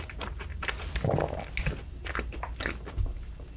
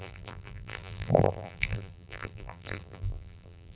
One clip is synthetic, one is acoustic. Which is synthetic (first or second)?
second